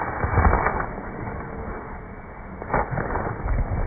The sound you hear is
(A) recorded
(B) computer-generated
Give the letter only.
A